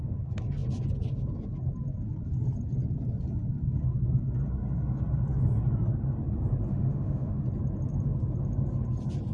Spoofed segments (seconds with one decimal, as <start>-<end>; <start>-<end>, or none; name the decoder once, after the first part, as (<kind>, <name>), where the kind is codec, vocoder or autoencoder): 6.7-7.4 (autoencoder, DAC-VAE)